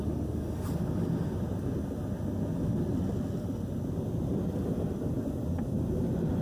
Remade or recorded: recorded